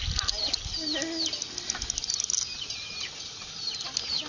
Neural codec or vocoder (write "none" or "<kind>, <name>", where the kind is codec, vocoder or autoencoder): none